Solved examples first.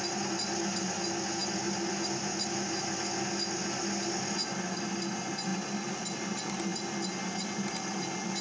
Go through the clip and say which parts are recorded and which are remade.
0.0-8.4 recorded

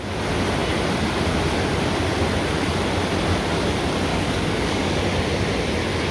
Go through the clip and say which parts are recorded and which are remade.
0.0-4.1 recorded; 4.1-5.0 remade; 5.0-6.1 recorded